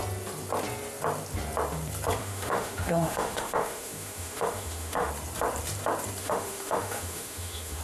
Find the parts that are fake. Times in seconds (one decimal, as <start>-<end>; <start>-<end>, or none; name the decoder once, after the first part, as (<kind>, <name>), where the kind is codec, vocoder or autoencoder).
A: 2.2-5.1 (autoencoder, DAC-VAE); 6.2-7.8